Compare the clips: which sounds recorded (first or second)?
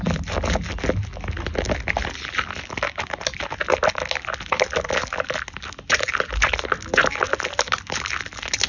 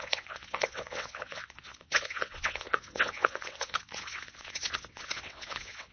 first